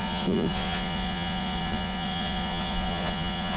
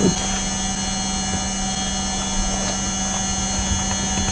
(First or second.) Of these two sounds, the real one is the second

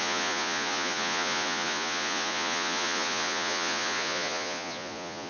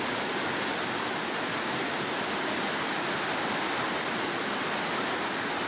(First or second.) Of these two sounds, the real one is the second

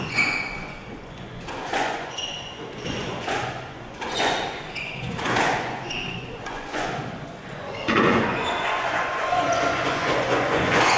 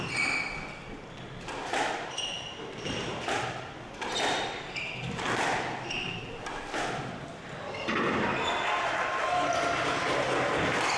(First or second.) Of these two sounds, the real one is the second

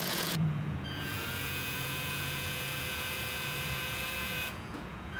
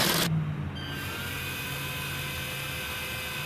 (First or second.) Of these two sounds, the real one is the second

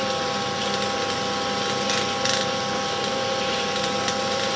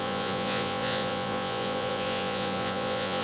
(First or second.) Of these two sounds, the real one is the first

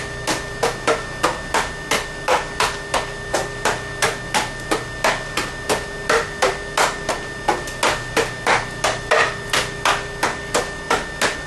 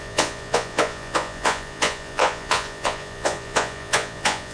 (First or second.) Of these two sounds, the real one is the first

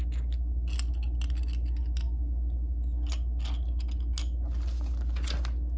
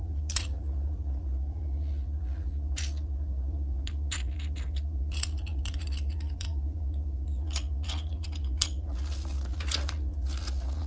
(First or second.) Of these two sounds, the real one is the first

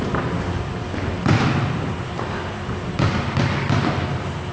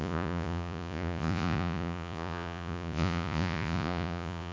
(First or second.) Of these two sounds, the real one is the first